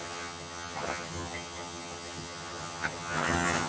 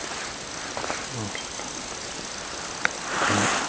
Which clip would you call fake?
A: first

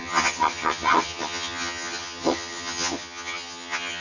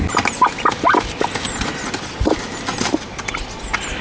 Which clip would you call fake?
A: first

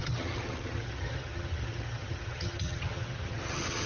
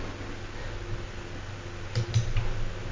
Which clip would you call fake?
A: first